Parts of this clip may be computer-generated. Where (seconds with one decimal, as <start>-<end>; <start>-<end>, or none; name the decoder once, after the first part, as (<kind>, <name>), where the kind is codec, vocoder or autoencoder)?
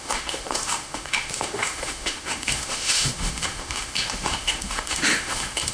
0.0-5.7 (autoencoder, DAC-VAE)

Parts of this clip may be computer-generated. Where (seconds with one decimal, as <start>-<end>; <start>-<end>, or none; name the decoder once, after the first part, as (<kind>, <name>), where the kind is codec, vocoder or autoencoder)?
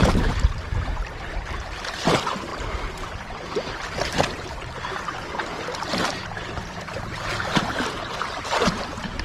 none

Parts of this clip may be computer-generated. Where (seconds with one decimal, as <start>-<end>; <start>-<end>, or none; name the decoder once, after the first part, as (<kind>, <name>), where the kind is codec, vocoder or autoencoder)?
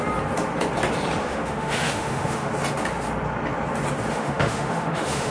1.2-2.5 (autoencoder, DAC-VAE); 4.1-5.3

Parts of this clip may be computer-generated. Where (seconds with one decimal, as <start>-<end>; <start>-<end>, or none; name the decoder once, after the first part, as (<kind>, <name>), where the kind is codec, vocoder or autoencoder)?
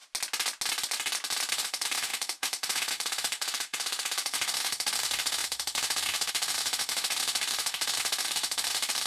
1.5-9.1 (autoencoder, DAC-VAE)